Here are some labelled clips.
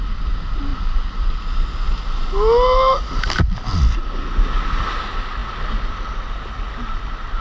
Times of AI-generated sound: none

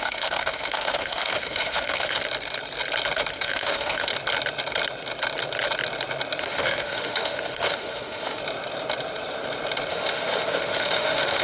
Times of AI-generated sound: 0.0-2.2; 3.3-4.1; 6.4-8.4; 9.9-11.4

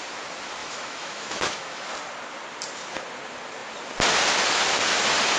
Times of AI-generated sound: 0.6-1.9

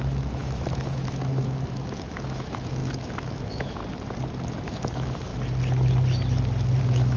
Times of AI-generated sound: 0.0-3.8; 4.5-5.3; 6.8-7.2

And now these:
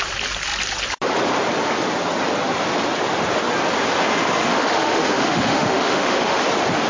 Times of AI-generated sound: 4.4-6.4

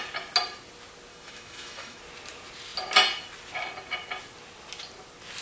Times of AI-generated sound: 1.1-2.0